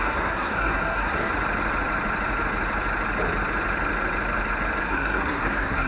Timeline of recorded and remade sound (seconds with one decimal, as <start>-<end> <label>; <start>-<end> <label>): 0.0-1.3 remade; 1.3-4.8 recorded; 4.8-5.9 remade